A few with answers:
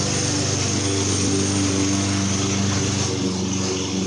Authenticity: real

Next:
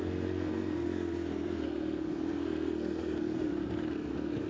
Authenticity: fake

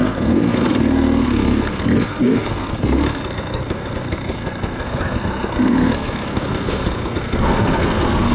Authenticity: fake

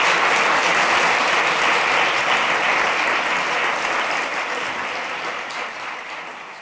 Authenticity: real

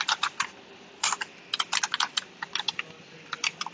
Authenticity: fake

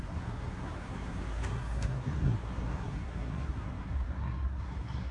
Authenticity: fake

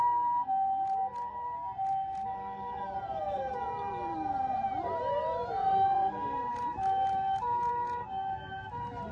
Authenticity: fake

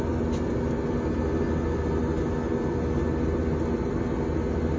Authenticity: real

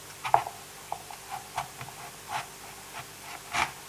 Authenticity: real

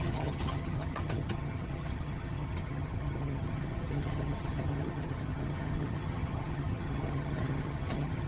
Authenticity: fake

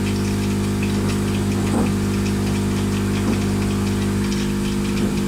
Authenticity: real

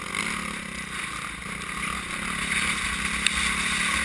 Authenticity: real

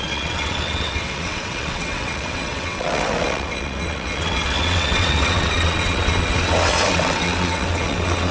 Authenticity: fake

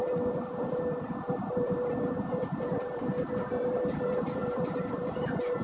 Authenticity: real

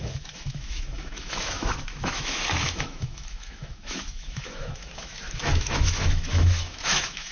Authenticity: fake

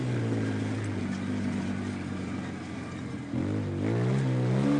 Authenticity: real